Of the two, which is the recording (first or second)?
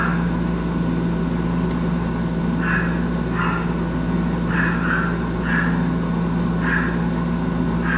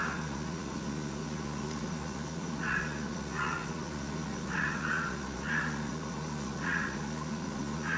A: first